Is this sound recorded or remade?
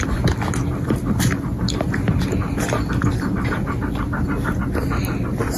recorded